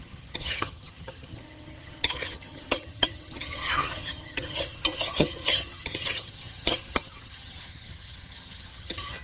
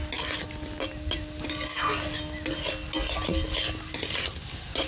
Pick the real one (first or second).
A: second